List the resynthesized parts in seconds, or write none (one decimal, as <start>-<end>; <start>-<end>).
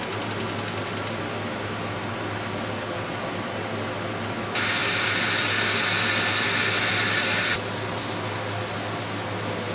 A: none